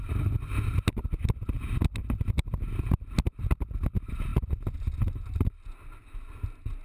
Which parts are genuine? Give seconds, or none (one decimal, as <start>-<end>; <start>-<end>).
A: 0.0-6.8